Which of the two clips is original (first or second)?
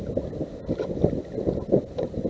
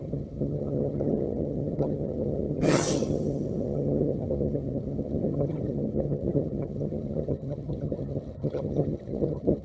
first